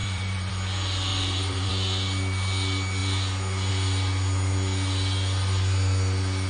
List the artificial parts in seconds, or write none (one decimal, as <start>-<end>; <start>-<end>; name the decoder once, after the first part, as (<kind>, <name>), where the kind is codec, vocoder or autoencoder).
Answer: 0.0-0.5 (vocoder, BigVGAN v2); 1.1-1.7